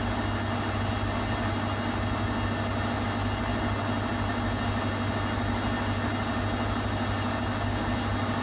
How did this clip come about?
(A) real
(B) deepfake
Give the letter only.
A